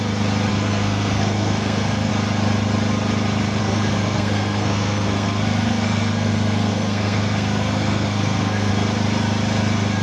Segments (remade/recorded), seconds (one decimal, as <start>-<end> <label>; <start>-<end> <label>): 0.0-0.5 recorded; 0.5-2.1 remade; 2.1-3.6 recorded; 3.6-8.7 remade; 8.7-10.0 recorded